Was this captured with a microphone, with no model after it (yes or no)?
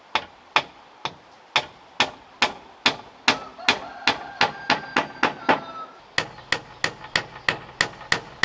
yes